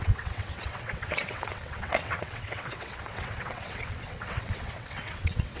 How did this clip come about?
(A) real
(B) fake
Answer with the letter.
B